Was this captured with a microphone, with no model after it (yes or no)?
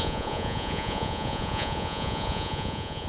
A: no